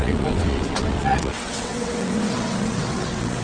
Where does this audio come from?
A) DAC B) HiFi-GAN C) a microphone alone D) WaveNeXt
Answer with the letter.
D